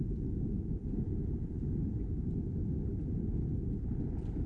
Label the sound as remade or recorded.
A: recorded